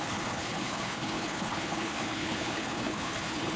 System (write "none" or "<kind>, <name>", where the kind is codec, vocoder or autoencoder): codec, HILCodec